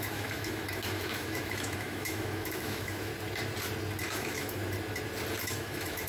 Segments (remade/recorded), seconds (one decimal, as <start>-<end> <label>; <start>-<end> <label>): 0.0-3.1 remade; 3.1-4.0 recorded; 4.0-4.6 remade; 4.6-5.4 recorded; 5.4-6.1 remade